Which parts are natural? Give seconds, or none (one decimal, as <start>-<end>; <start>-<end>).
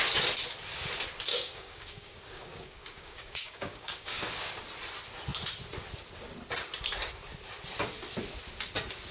0.0-1.3; 4.5-9.1